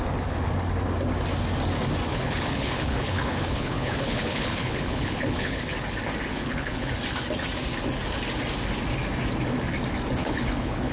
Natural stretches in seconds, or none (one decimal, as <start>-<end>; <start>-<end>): 0.0-2.1; 5.6-6.3; 6.9-10.2